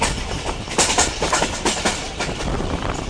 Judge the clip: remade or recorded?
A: recorded